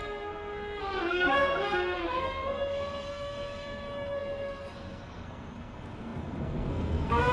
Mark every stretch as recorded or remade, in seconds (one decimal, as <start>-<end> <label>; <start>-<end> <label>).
0.0-7.3 remade